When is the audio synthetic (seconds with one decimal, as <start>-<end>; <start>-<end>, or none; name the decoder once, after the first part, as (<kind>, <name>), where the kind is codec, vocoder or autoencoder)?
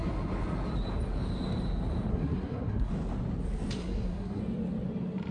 2.1-2.9 (codec, SNAC); 3.8-4.4